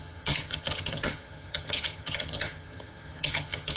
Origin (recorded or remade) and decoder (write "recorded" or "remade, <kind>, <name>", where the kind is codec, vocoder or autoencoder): remade, vocoder, HiFi-GAN